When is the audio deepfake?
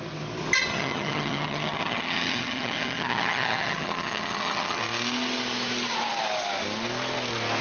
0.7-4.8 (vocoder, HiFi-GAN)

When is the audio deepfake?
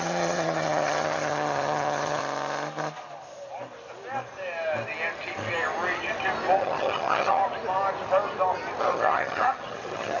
0.0-2.2 (vocoder, HiFi-GAN); 6.6-7.4; 8.8-10.2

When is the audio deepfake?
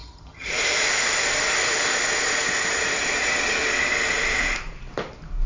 0.0-0.5 (vocoder, HiFi-GAN)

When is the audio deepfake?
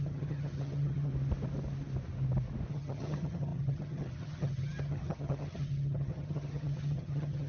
0.0-1.1 (vocoder, HiFi-GAN); 2.7-7.5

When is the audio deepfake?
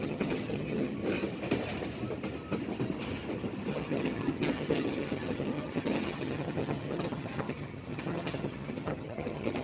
0.0-1.0 (vocoder, HiFi-GAN); 3.7-9.6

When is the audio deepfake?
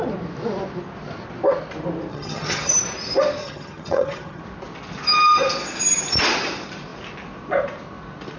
2.1-2.8 (vocoder, HiFi-GAN); 3.4-4.4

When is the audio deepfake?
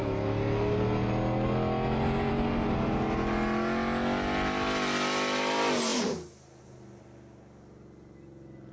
none